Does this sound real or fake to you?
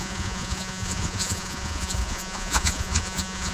fake